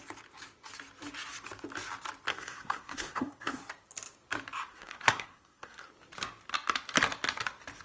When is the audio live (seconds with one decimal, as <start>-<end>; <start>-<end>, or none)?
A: 0.0-2.3; 3.6-4.7; 5.9-7.8